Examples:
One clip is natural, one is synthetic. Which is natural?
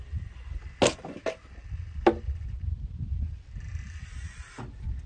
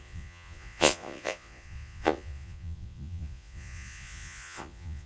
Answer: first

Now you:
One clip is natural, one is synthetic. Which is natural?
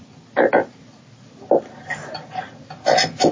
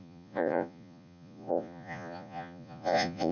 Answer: first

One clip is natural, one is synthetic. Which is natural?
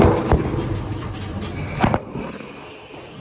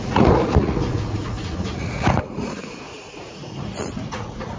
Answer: first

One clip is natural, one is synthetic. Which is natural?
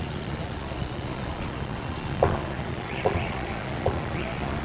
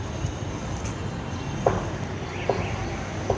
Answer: second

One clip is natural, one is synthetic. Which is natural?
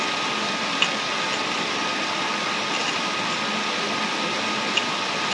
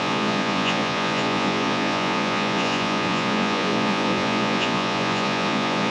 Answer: first